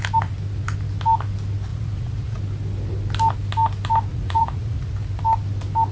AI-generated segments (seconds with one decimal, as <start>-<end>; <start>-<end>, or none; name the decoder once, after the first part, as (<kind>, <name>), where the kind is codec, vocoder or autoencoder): 1.7-2.4 (vocoder, Vocos); 4.1-4.9

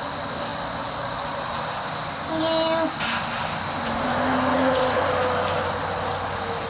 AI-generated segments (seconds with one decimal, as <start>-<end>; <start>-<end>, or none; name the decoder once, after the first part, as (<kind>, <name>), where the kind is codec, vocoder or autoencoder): 4.5-5.0 (vocoder, Vocos)

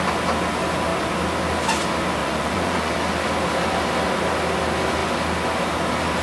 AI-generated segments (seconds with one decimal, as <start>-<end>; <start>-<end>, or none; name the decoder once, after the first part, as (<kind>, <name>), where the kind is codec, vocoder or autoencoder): 2.2-2.9 (vocoder, Vocos)

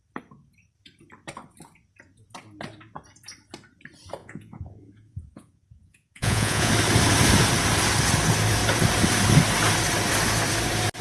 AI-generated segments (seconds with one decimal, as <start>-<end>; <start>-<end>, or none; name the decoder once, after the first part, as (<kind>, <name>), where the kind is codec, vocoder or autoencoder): 4.2-6.7 (vocoder, Vocos)